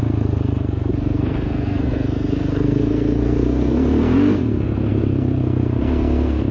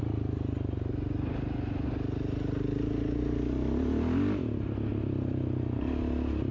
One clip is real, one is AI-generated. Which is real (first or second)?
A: second